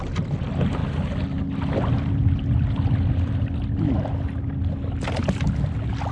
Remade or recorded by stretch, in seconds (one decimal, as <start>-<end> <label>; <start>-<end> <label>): 0.0-6.1 recorded